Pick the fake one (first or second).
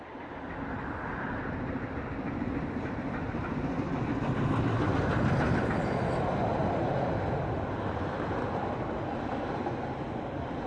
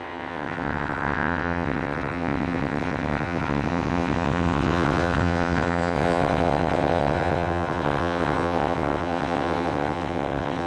second